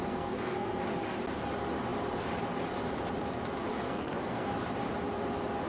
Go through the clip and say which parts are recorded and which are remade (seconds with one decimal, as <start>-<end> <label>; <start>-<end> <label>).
0.0-0.8 remade; 0.8-3.7 recorded; 3.7-4.5 remade; 4.5-5.7 recorded